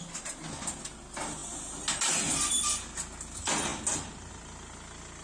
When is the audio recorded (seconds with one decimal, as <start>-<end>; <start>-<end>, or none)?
0.0-5.2